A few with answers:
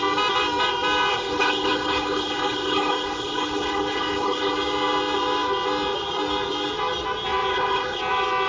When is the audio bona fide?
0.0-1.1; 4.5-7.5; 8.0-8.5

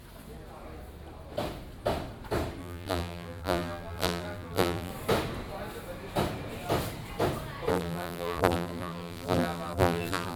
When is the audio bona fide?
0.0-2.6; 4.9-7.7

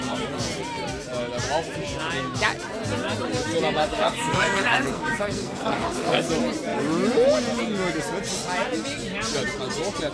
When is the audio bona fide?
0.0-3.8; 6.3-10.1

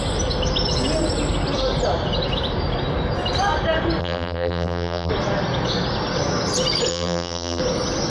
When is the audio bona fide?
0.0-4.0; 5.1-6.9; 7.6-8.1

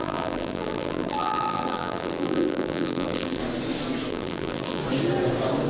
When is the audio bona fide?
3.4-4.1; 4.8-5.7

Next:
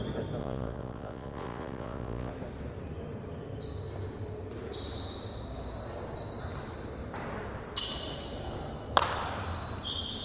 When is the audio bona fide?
0.0-0.4; 2.3-10.2

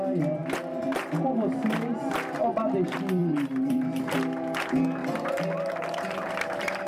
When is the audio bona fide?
0.0-0.4; 2.1-3.2; 4.1-5.0; 6.3-6.9

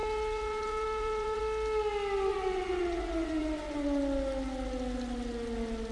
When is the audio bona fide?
1.4-2.3; 4.0-5.9